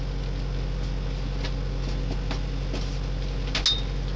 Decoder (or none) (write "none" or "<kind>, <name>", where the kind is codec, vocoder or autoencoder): none